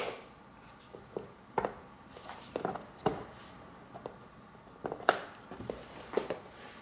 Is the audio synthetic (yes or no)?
no